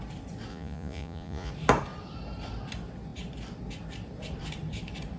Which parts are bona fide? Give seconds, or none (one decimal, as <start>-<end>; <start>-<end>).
0.0-0.5; 1.5-5.2